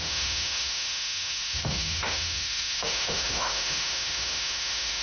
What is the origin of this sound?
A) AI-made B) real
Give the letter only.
A